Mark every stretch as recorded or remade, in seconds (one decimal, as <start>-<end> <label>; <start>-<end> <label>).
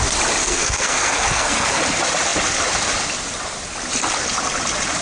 0.0-0.4 recorded; 0.4-1.8 remade; 1.8-5.0 recorded